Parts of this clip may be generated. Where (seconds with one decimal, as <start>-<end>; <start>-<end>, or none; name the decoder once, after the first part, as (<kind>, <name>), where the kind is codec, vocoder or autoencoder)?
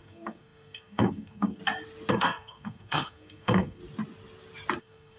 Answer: 0.0-1.6 (codec, SNAC); 2.1-3.8; 4.8-5.2